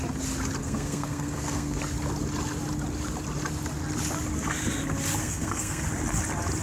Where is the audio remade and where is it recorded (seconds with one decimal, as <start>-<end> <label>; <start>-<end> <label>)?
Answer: 0.0-0.6 recorded; 0.6-1.8 remade; 1.8-5.2 recorded; 5.2-5.8 remade; 5.8-6.6 recorded